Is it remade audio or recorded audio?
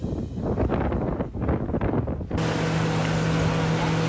recorded